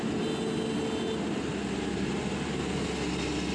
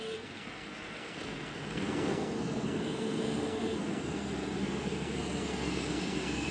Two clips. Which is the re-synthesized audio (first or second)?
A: second